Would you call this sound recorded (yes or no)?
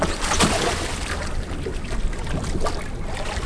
yes